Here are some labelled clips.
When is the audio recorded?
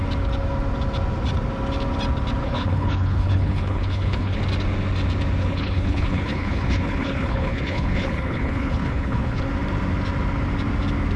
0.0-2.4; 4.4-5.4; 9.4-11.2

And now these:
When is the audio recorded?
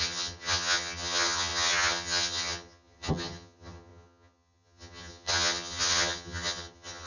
none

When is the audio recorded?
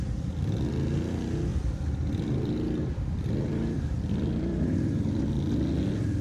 0.0-1.5; 5.2-6.2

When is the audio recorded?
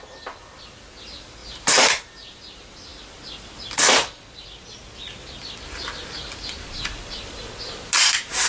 0.0-1.4; 2.4-8.5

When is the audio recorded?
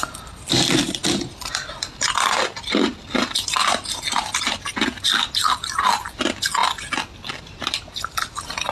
0.0-8.7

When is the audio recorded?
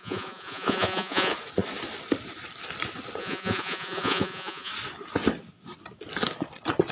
1.3-3.2; 4.7-6.9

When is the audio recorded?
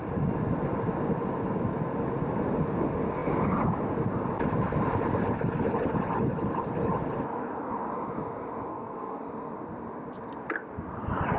0.0-8.7; 9.2-11.4